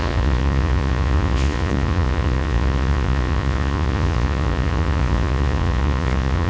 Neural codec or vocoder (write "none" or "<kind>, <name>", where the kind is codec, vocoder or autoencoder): vocoder, Vocos